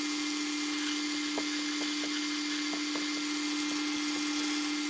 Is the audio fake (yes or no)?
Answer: no